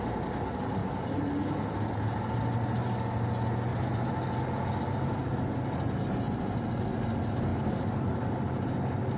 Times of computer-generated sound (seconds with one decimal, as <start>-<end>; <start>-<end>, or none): 0.8-2.1; 3.7-4.4

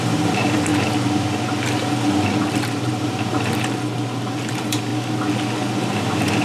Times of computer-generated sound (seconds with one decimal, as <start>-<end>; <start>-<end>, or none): 0.0-0.7; 4.5-4.9; 5.8-6.4

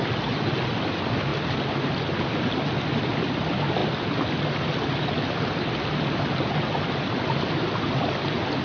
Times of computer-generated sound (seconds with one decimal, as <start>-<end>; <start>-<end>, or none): none